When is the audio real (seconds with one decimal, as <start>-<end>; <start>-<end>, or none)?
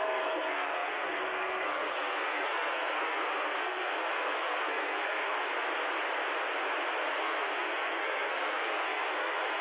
5.5-7.2